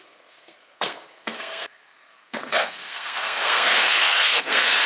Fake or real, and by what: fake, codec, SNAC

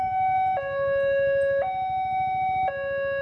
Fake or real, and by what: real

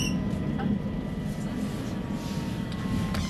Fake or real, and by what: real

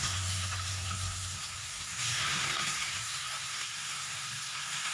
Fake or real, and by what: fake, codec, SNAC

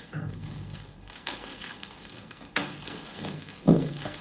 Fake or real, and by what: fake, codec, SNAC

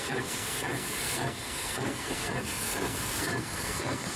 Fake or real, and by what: fake, codec, SNAC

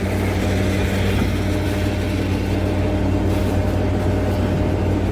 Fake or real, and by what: real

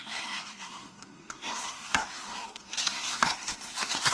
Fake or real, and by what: fake, codec, SNAC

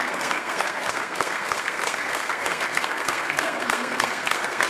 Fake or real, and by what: fake, codec, SNAC